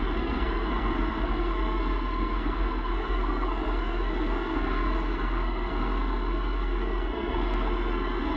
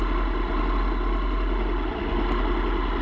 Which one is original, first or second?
second